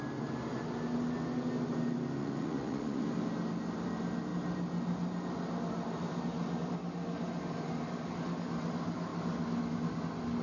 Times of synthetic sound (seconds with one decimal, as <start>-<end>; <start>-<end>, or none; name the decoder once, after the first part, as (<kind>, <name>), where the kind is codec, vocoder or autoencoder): 2.2-3.0 (vocoder, Vocos)